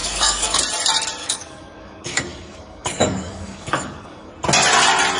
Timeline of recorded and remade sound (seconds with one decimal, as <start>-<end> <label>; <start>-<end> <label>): 0.0-0.6 remade; 0.6-1.2 recorded; 1.2-4.3 remade; 4.3-5.2 recorded